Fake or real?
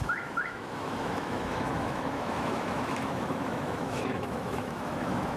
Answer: fake